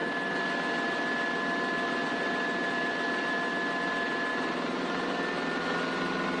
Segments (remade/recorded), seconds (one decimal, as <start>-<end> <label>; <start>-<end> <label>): 0.0-4.3 recorded; 4.3-5.1 remade; 5.1-6.4 recorded

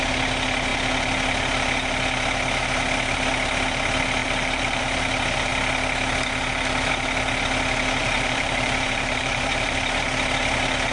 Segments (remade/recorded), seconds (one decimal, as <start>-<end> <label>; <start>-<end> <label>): 0.0-4.2 recorded; 4.2-4.8 remade; 4.8-8.0 recorded; 8.0-10.0 remade; 10.0-10.9 recorded

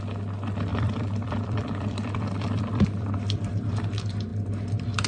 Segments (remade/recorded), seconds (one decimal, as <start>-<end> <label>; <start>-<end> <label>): 0.0-0.7 recorded; 0.7-3.7 remade; 3.7-5.1 recorded

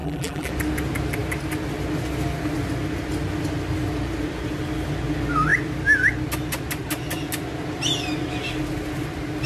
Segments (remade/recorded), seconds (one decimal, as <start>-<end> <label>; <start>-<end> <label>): 0.0-0.5 remade; 0.5-9.5 recorded

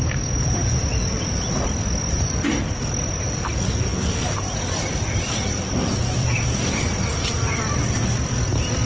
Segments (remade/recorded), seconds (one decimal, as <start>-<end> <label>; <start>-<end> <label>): 0.0-8.9 remade

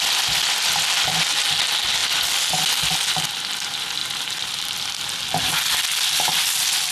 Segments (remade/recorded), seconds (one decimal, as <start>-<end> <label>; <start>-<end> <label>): 0.0-6.9 recorded

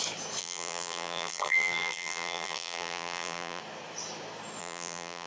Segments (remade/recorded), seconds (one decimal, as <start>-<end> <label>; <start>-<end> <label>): 0.0-0.4 recorded; 0.4-3.6 remade; 3.6-4.6 recorded; 4.6-5.3 remade

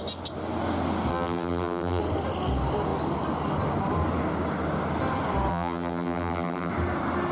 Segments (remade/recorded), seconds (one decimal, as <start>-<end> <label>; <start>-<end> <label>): 0.0-1.1 recorded; 1.1-2.0 remade; 2.0-5.5 recorded; 5.5-6.7 remade; 6.7-7.3 recorded